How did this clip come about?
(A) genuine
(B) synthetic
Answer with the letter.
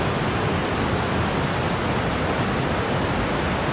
A